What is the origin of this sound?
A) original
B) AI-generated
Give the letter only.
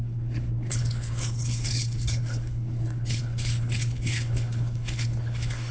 B